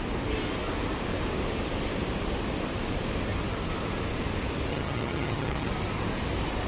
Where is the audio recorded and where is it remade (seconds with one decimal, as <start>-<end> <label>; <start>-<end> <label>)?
0.0-4.7 recorded; 4.7-5.7 remade; 5.7-6.7 recorded